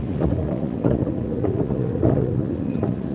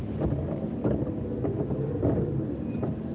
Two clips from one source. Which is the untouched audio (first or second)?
second